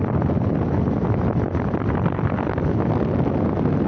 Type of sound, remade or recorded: recorded